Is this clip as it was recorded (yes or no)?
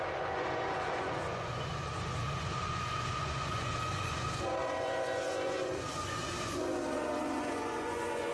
no